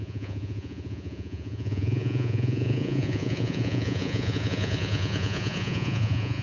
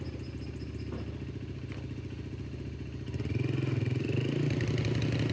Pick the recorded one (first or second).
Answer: second